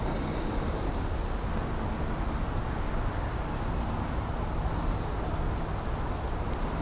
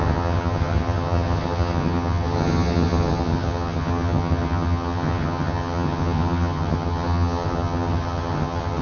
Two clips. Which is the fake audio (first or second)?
second